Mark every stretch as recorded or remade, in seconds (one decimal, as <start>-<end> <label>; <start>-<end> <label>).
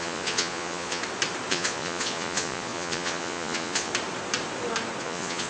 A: 0.0-1.0 remade; 1.0-1.5 recorded; 1.5-3.9 remade; 3.9-5.0 recorded; 5.0-5.5 remade